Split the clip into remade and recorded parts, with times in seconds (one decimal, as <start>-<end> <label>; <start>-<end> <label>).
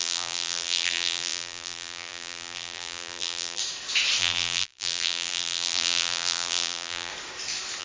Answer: 0.0-3.6 remade; 3.6-4.2 recorded; 4.2-7.1 remade; 7.1-7.8 recorded